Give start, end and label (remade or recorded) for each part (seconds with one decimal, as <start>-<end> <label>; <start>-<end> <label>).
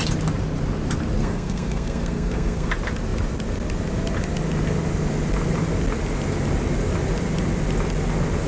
0.0-1.2 recorded; 1.2-2.7 remade; 2.7-8.5 recorded